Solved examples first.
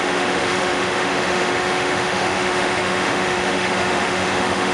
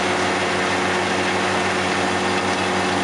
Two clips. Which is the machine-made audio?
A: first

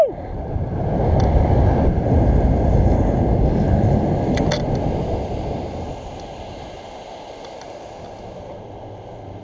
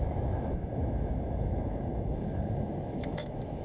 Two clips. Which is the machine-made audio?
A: second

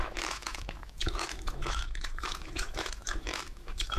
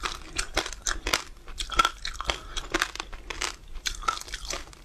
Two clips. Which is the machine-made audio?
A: first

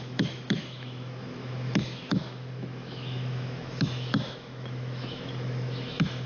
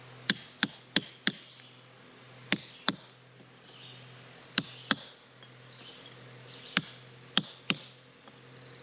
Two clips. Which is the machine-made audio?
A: first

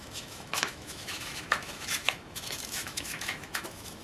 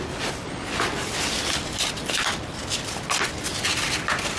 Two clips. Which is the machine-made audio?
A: first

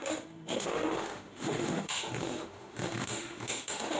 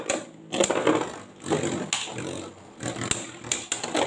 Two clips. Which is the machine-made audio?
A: first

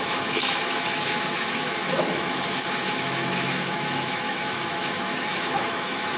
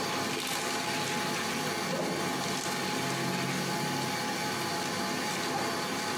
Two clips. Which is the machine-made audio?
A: first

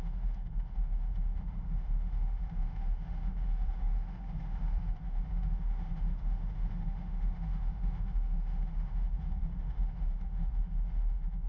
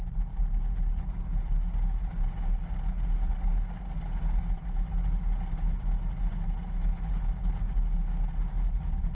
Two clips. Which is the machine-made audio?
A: first